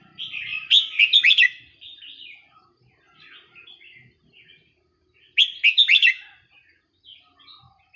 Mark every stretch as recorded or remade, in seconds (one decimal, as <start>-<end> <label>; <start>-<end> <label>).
0.0-8.0 recorded